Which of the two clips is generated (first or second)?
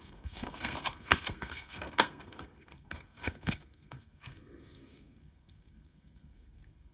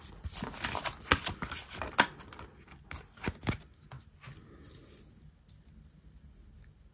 first